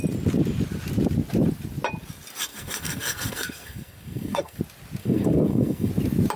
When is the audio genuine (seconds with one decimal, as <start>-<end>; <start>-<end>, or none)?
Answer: 0.0-2.5; 4.6-5.0; 5.9-6.4